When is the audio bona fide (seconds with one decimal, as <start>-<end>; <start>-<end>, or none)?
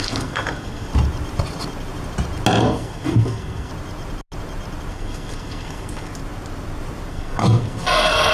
0.9-2.6; 3.7-4.9; 6.1-7.1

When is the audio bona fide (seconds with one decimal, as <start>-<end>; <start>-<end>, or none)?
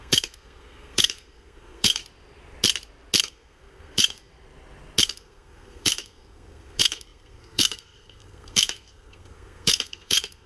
2.0-3.2; 4.3-5.0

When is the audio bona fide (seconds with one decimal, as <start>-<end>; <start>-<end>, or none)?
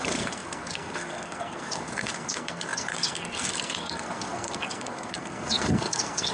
none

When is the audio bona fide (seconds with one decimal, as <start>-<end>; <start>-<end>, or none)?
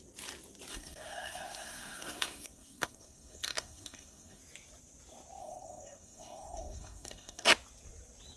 0.0-0.7; 4.4-5.4; 7.5-8.4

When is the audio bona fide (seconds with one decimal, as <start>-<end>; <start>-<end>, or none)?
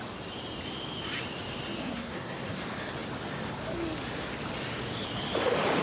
0.0-1.8; 2.6-5.8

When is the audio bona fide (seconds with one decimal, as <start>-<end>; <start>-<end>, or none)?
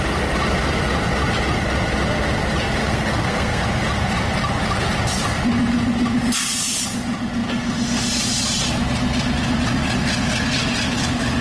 0.0-2.8; 3.6-11.4